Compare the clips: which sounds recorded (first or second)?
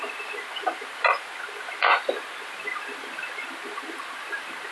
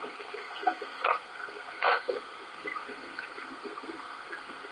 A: first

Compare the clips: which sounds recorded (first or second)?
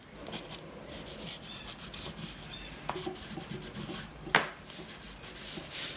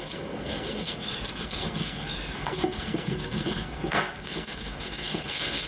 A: first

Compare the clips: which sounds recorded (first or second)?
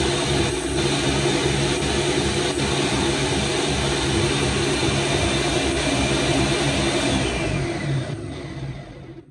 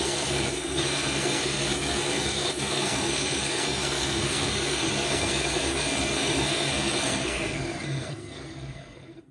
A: first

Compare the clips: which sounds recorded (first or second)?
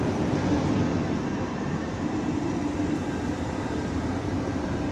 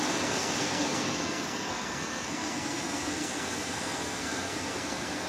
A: first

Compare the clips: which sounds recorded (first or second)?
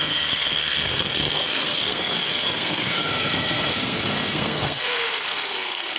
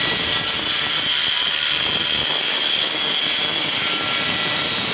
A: second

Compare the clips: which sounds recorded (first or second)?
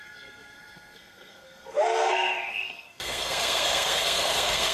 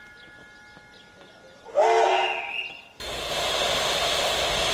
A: second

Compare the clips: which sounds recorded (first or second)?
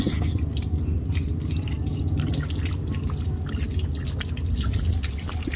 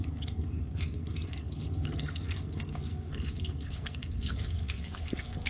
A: first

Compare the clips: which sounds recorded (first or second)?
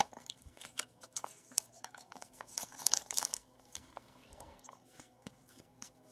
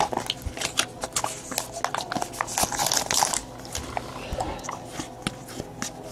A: second